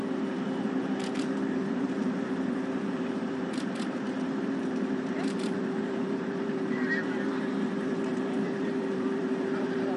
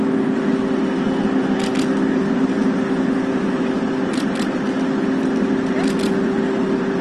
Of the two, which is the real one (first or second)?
second